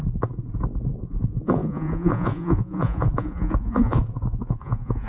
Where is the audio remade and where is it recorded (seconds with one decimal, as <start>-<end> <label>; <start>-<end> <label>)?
0.0-1.0 recorded; 1.0-5.1 remade